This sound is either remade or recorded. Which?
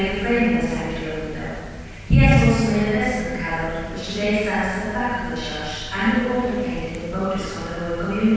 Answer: recorded